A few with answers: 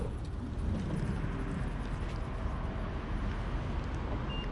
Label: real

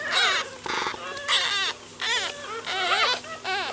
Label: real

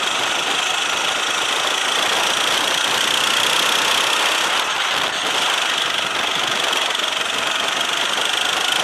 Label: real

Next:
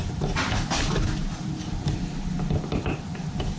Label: real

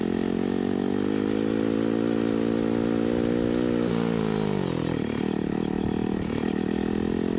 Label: real